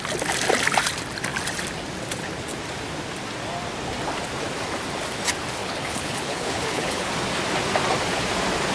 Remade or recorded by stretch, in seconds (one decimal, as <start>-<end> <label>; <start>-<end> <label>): 0.0-5.6 recorded; 5.6-7.1 remade; 7.1-8.7 recorded